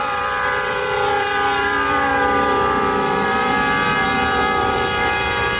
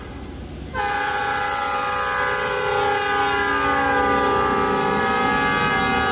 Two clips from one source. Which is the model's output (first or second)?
first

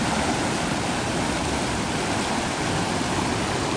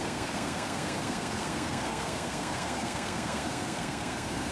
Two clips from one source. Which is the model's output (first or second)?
second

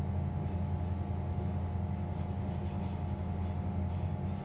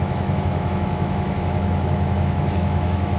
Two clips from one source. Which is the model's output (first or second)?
second